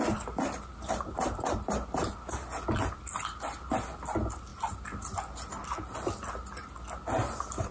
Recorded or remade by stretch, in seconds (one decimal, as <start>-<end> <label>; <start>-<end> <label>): 0.0-7.7 recorded